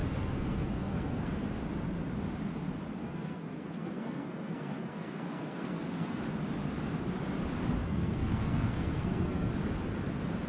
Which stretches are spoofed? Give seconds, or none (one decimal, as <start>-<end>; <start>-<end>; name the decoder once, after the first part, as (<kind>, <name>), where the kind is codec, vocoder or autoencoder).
0.0-1.3 (codec, SNAC); 3.0-6.2; 7.8-9.5